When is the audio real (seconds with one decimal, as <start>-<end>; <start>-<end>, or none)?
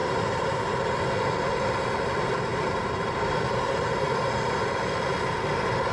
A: 0.6-2.5; 4.6-5.9